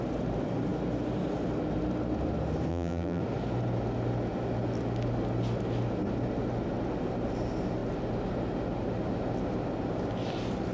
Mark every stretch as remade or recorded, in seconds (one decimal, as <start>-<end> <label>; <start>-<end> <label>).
0.0-2.7 recorded; 2.7-3.2 remade; 3.2-10.7 recorded